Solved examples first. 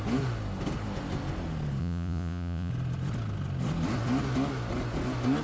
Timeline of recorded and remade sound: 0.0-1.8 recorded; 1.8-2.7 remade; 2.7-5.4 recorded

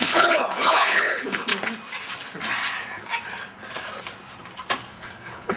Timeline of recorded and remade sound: 0.0-1.5 remade; 1.5-4.9 recorded; 4.9-5.6 remade

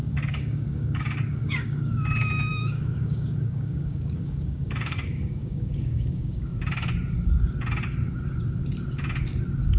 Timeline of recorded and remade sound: 0.0-6.5 remade; 6.5-9.8 recorded

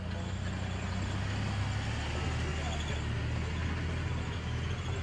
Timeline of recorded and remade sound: 0.0-5.0 recorded

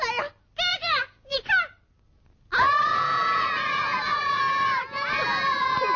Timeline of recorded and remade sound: 0.0-0.7 recorded; 0.7-1.5 remade; 1.5-2.9 recorded; 2.9-4.4 remade; 4.4-6.0 recorded

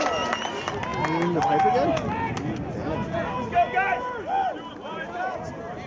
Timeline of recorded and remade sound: 0.0-5.9 recorded

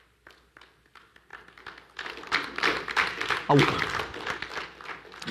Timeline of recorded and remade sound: 0.0-5.3 recorded